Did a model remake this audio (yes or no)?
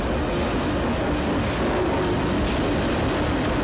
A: no